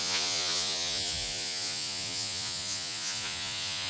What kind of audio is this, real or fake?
fake